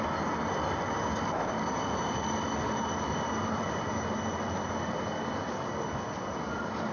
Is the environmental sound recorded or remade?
recorded